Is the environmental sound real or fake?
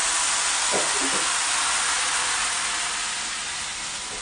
real